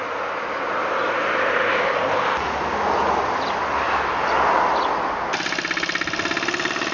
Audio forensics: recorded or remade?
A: recorded